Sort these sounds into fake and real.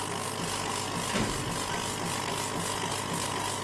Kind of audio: real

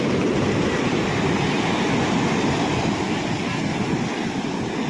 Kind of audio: real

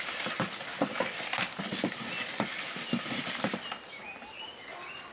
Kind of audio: real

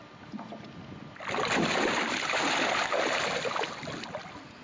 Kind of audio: real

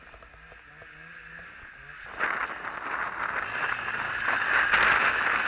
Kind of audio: real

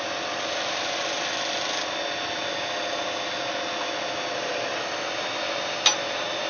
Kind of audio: fake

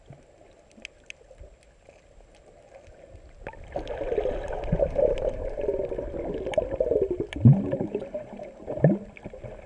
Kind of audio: real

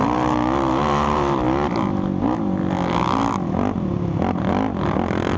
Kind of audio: real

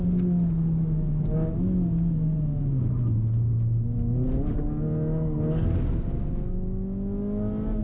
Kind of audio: real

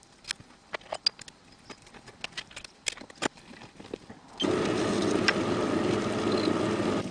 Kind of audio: real